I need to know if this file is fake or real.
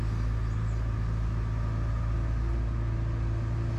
real